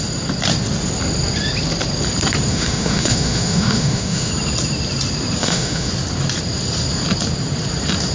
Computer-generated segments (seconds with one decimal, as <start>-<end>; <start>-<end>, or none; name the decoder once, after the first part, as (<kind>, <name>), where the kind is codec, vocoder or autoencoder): 2.5-4.3 (autoencoder, DAC-VAE); 5.4-5.9